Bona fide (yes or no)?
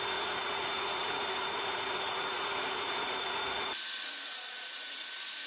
no